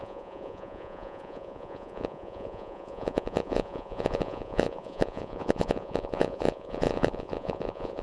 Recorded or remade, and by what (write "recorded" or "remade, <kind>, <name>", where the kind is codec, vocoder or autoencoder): remade, vocoder, Vocos